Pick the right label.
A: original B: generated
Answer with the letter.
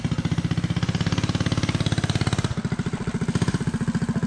A